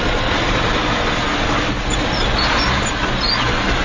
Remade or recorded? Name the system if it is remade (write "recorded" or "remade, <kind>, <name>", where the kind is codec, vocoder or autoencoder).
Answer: recorded